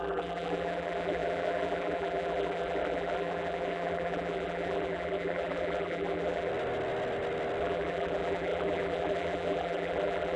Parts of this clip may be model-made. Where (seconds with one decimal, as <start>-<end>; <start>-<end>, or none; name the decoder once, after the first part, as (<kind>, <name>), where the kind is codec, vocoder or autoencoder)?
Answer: 0.0-6.5 (vocoder, BigVGAN v2); 7.6-10.4